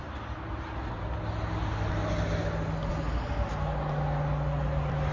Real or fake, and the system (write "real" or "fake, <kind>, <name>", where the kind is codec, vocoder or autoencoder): real